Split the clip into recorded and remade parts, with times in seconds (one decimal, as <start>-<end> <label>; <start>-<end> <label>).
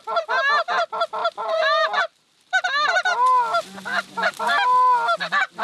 0.0-5.6 recorded